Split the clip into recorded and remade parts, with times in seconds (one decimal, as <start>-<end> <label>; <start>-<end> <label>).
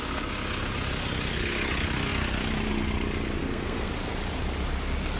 0.0-3.4 recorded; 3.4-3.9 remade; 3.9-5.2 recorded